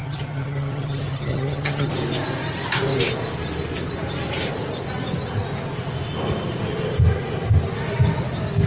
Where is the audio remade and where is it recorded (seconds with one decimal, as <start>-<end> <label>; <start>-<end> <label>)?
0.0-1.9 remade; 1.9-8.7 recorded